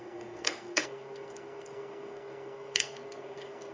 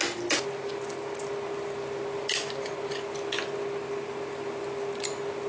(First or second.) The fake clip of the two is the first